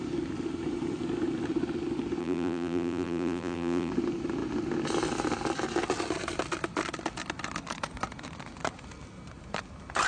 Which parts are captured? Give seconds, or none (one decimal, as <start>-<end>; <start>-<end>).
0.0-2.2; 3.9-10.1